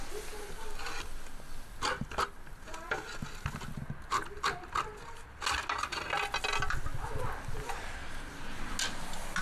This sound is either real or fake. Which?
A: real